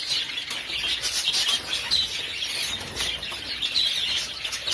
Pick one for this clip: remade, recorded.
recorded